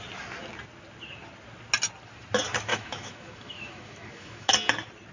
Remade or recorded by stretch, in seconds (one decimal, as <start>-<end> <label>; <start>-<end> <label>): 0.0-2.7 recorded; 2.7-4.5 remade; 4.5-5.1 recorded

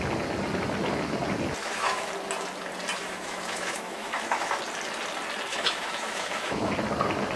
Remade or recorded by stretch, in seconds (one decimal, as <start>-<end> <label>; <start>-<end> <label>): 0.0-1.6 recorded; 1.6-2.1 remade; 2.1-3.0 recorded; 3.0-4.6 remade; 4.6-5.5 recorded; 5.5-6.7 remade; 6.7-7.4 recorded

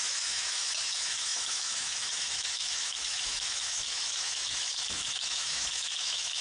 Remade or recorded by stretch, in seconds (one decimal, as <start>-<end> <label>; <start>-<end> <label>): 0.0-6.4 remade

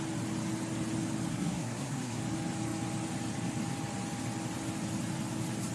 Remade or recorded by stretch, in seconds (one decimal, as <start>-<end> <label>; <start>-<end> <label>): 0.0-1.3 recorded; 1.3-2.2 remade; 2.2-5.7 recorded

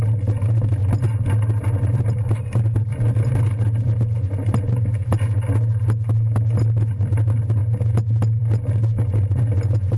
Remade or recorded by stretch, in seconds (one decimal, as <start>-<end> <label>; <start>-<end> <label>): 0.0-10.0 recorded

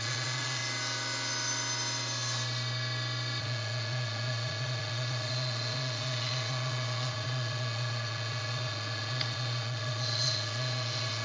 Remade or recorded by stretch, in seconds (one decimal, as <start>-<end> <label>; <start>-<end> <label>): 0.0-0.6 remade; 0.6-3.4 recorded; 3.4-11.2 remade